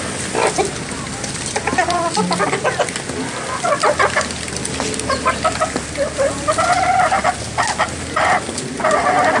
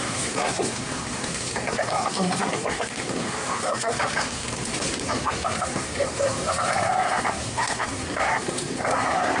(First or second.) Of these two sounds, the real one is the first